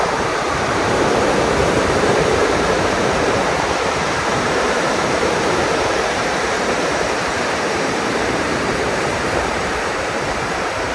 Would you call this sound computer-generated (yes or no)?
yes